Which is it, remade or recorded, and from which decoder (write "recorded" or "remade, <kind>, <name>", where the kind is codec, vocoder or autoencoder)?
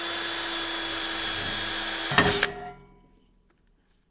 recorded